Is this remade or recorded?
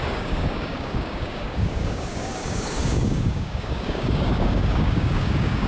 remade